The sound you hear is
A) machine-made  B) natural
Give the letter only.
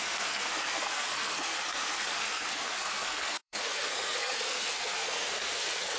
A